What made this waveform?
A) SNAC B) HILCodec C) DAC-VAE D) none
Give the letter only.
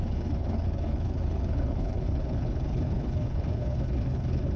B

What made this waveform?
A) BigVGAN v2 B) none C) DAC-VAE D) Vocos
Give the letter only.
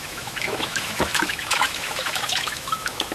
C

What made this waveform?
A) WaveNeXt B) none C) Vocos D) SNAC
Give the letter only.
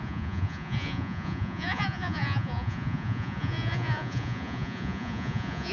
C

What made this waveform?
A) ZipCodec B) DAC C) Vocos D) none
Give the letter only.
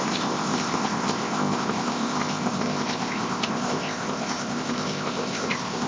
A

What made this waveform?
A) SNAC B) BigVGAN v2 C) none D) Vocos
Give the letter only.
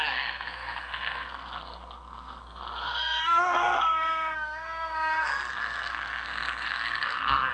A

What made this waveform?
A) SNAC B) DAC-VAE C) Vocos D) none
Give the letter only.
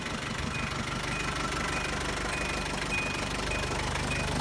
D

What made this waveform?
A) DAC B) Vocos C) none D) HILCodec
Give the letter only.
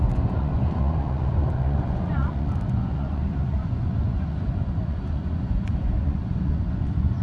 B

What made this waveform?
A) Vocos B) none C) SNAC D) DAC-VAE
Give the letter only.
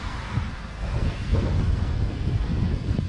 C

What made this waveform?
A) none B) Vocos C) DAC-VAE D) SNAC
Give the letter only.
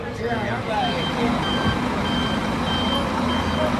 A